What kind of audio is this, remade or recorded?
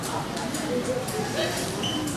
recorded